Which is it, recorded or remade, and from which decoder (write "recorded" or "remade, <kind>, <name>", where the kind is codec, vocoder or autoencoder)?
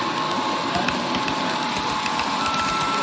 recorded